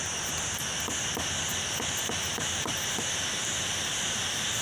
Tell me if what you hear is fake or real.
real